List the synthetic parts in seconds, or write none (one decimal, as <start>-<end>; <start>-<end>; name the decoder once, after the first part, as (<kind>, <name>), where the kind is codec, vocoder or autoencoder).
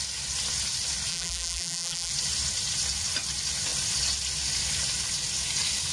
1.1-2.1 (vocoder, BigVGAN v2)